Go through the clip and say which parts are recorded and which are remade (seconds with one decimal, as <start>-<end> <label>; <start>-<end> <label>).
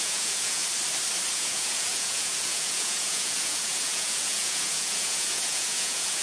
0.0-0.6 remade; 0.6-1.3 recorded; 1.3-6.2 remade